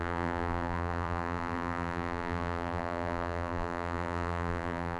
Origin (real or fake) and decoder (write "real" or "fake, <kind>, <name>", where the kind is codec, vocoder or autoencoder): fake, vocoder, BigVGAN v2